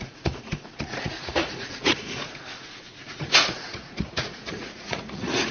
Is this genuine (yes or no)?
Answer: no